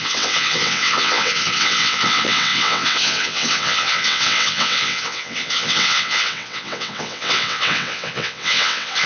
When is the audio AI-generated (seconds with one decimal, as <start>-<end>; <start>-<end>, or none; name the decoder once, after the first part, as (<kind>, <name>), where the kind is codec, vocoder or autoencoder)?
0.0-9.1 (vocoder, WaveNeXt)